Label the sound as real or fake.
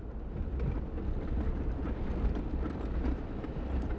real